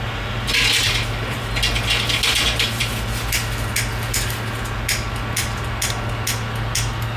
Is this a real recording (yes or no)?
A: yes